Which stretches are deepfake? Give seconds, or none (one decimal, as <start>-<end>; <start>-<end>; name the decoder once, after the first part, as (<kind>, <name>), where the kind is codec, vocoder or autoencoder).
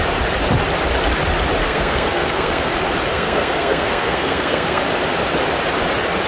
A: 1.6-2.7 (codec, SNAC); 3.1-4.8